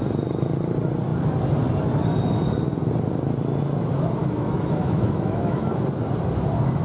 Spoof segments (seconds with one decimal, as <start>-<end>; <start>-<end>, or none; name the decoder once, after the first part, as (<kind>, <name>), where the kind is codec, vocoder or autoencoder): 4.2-5.7 (autoencoder, DAC-VAE)